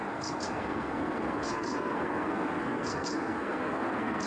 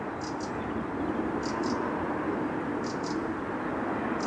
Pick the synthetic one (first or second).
first